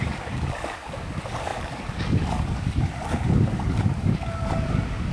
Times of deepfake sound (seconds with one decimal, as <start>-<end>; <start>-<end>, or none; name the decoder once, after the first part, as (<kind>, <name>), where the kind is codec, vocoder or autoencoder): 0.0-5.1 (codec, DAC)